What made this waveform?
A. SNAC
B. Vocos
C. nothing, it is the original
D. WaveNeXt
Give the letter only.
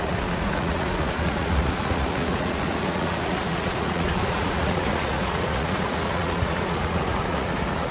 B